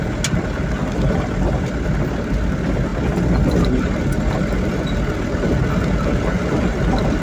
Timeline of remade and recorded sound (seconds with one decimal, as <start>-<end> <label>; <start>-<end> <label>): 0.0-7.2 recorded